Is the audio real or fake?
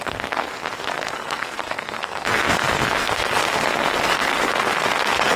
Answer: fake